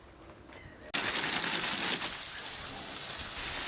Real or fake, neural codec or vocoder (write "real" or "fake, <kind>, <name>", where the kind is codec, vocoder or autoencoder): real